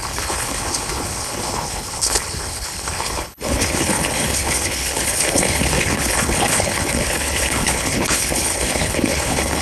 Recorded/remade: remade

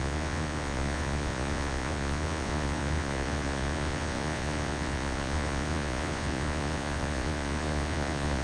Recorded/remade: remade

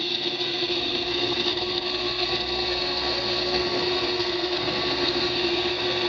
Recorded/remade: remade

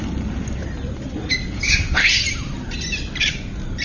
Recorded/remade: recorded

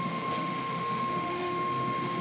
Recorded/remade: remade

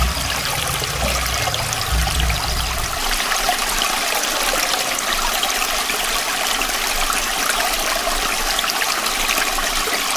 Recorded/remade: recorded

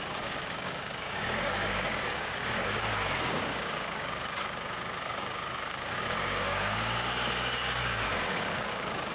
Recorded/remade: remade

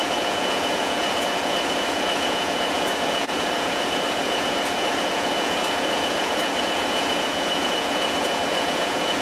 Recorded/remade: remade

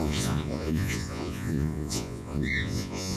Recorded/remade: remade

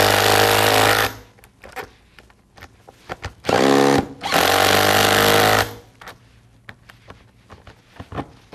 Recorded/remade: recorded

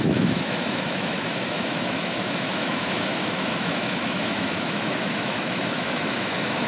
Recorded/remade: remade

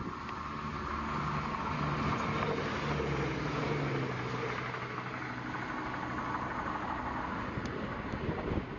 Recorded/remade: recorded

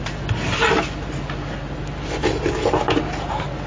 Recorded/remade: recorded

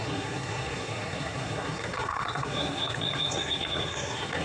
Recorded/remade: remade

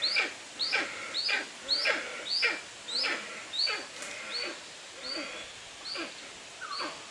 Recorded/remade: recorded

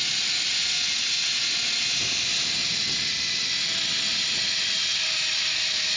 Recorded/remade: recorded